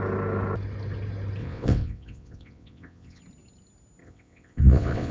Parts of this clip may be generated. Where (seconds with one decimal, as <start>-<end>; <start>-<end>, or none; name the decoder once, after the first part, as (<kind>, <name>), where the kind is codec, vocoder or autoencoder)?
1.4-3.2 (vocoder, WaveNeXt); 4.0-5.1